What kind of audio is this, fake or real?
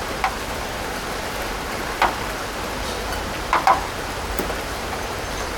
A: fake